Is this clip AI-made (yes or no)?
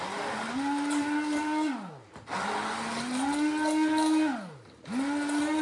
no